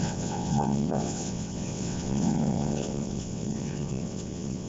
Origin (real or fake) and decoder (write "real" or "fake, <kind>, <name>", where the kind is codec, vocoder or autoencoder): fake, vocoder, WaveNeXt